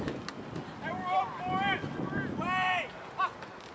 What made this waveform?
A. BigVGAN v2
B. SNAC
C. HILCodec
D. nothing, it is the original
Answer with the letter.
D